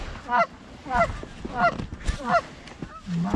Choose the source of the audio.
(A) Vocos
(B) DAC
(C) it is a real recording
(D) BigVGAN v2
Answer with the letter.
C